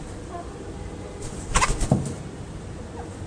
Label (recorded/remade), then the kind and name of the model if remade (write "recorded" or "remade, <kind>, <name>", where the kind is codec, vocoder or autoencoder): recorded